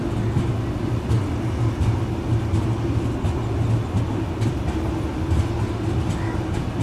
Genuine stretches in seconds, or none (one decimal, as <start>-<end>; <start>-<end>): 0.0-6.8